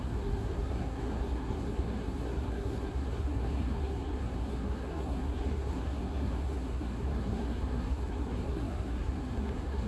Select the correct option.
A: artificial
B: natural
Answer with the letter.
A